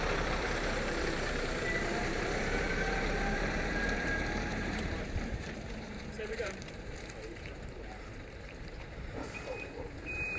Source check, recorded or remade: remade